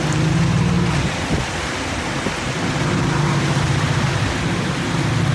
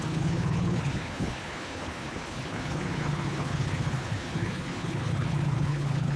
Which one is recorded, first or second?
first